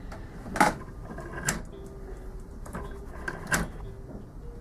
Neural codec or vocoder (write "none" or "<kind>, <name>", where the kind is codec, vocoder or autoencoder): none